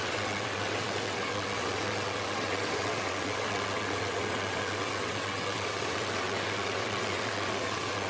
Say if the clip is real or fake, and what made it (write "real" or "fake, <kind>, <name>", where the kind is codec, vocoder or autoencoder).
fake, vocoder, WaveNeXt